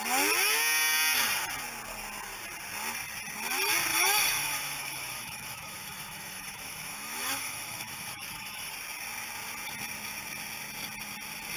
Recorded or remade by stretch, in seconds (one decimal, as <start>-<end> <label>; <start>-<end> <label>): 0.0-3.9 recorded; 3.9-8.7 remade; 8.7-11.6 recorded